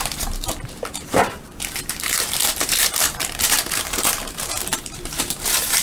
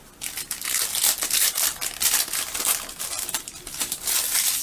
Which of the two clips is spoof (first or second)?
first